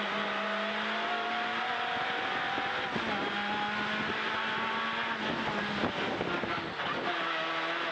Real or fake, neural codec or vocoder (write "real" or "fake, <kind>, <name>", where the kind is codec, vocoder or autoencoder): real